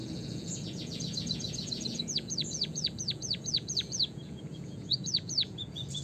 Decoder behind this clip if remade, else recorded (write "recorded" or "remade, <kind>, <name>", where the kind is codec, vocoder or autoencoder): remade, vocoder, Vocos